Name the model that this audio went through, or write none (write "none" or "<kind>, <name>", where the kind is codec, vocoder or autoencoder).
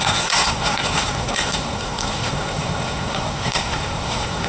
codec, SNAC